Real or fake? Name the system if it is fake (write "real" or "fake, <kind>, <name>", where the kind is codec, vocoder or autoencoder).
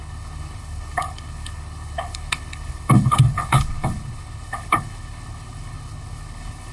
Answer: fake, codec, HILCodec